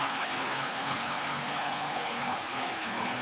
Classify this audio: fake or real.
fake